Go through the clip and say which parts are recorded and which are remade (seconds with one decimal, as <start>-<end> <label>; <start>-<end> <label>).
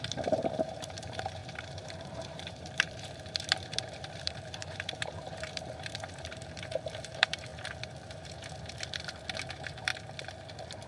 0.0-7.5 remade; 7.5-9.5 recorded; 9.5-9.9 remade; 9.9-10.9 recorded